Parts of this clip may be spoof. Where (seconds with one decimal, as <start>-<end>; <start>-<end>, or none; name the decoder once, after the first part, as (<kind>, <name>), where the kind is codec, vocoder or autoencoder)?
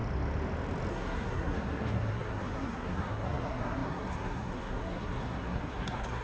0.9-6.2 (codec, SNAC)